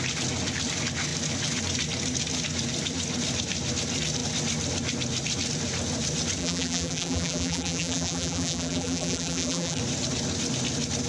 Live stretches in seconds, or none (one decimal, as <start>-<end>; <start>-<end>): 0.0-6.4; 9.8-11.1